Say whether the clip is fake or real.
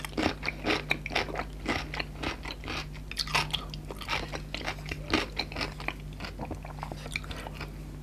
real